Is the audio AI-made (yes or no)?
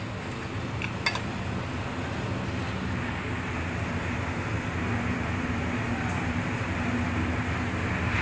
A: no